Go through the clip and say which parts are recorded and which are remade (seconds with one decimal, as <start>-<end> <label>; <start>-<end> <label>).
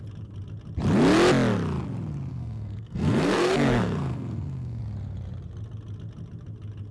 0.0-2.3 recorded; 2.3-4.8 remade; 4.8-6.9 recorded